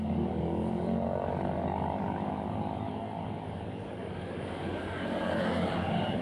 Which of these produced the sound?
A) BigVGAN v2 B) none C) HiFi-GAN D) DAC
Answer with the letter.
D